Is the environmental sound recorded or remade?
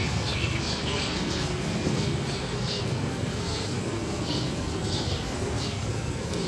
remade